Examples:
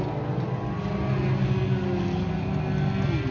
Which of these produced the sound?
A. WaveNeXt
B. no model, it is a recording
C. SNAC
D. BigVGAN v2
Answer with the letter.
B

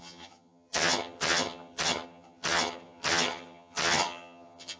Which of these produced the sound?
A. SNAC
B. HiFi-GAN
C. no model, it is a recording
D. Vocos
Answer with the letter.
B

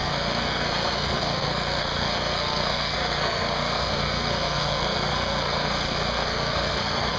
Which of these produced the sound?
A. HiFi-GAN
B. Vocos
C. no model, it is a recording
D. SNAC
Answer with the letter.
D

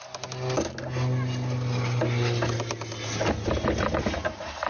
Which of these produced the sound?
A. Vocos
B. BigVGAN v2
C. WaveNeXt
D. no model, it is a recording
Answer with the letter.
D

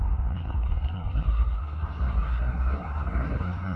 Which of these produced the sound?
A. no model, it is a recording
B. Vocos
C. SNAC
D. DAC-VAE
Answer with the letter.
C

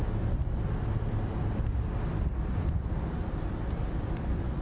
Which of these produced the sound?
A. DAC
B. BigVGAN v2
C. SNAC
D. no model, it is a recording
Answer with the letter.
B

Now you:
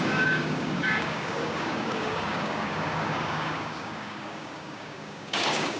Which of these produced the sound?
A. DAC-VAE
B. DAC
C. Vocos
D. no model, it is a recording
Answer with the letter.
B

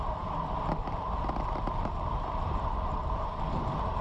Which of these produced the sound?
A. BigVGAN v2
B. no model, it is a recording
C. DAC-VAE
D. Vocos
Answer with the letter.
B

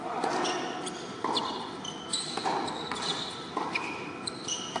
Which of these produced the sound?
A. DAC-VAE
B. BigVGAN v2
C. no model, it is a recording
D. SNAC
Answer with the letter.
C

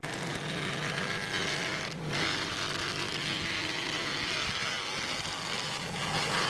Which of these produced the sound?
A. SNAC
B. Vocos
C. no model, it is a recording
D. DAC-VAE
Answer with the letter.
C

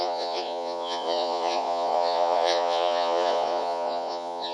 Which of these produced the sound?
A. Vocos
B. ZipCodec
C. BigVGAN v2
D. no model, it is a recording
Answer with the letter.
A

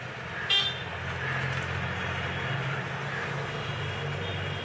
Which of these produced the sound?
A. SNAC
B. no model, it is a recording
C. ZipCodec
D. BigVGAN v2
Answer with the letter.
B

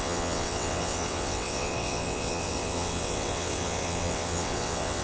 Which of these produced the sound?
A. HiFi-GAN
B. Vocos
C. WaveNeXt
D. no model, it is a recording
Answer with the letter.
C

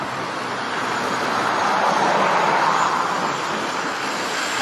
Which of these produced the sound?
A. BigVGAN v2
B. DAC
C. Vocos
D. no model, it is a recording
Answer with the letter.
D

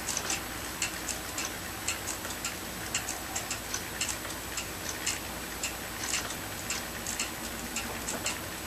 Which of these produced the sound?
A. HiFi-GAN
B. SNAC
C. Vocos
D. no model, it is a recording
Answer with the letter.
D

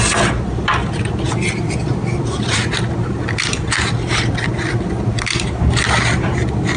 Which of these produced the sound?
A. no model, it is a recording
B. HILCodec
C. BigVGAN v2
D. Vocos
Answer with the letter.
A